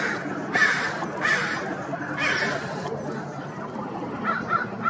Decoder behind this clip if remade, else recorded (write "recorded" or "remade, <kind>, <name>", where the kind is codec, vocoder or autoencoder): remade, vocoder, BigVGAN v2